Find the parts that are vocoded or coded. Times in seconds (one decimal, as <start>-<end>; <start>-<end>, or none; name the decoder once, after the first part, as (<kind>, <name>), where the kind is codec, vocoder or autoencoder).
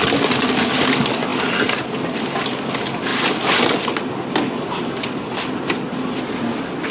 none